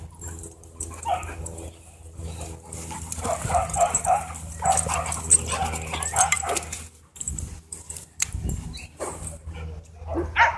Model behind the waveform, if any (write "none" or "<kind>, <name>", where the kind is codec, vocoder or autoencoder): vocoder, BigVGAN v2